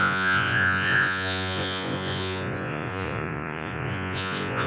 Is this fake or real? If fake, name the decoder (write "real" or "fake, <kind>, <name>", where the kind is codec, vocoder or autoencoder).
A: fake, vocoder, Vocos